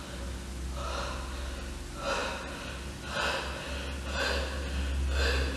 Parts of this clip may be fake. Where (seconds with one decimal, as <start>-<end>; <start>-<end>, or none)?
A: none